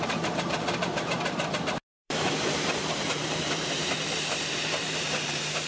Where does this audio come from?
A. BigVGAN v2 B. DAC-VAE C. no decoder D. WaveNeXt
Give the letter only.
A